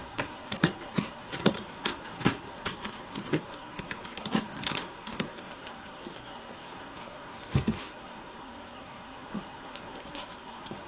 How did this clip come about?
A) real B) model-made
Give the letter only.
B